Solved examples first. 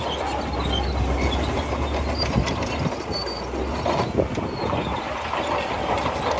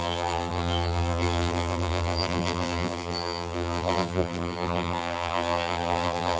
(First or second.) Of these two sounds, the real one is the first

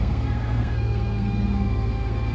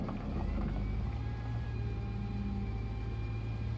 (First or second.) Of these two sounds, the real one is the second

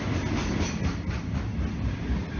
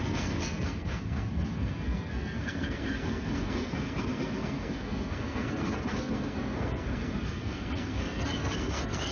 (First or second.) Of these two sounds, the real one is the first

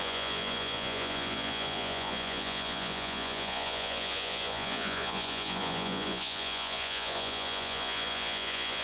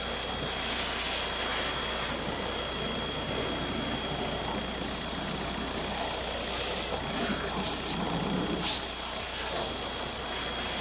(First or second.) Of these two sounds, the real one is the second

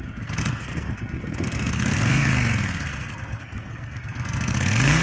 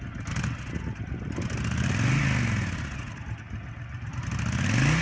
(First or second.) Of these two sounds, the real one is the second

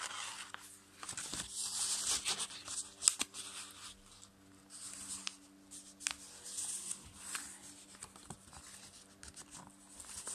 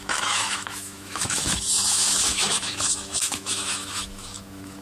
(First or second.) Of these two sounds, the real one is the first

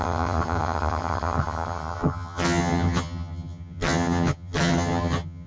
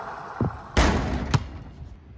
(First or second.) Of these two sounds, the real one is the second